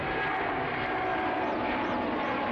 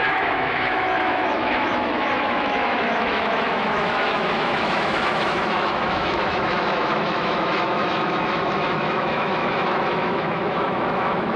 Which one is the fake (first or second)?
second